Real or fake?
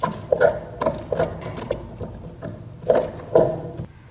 real